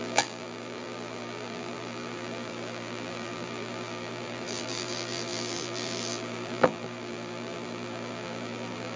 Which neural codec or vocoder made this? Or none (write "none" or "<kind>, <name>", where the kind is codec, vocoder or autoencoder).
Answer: vocoder, BigVGAN v2